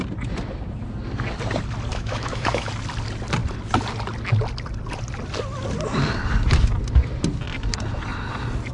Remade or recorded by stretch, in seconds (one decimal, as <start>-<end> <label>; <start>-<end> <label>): 0.0-1.9 recorded; 1.9-2.7 remade; 2.7-8.7 recorded